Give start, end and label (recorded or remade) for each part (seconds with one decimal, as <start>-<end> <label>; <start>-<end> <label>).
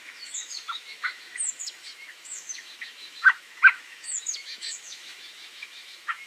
0.0-6.3 remade